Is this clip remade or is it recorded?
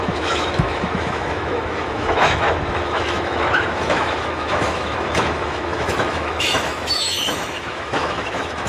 remade